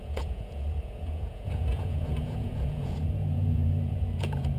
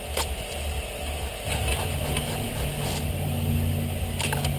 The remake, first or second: first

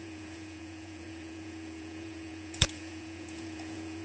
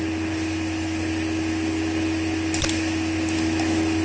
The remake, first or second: first